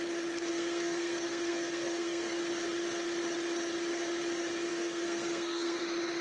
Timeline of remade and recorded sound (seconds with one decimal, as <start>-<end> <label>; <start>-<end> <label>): 0.0-0.5 recorded; 0.5-2.4 remade; 2.4-4.7 recorded; 4.7-5.8 remade; 5.8-6.2 recorded